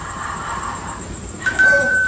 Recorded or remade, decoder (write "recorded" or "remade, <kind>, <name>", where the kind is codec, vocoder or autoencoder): remade, vocoder, BigVGAN v2